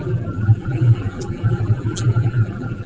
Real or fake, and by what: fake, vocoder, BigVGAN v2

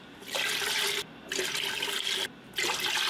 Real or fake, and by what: real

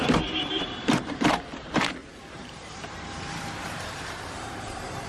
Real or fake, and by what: fake, vocoder, BigVGAN v2